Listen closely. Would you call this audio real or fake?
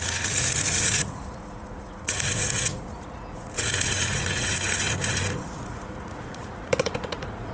fake